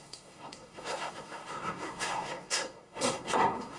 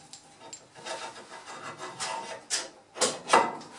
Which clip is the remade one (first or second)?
first